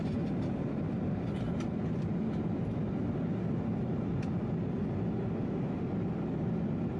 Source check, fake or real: real